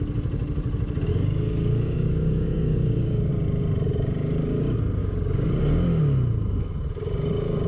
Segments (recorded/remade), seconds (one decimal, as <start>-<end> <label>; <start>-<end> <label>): 0.0-1.1 recorded; 1.1-3.3 remade; 3.3-5.0 recorded; 5.0-6.0 remade; 6.0-7.7 recorded